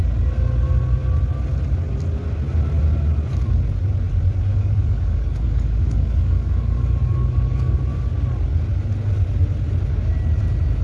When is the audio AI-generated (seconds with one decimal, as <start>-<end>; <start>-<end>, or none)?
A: 4.5-7.8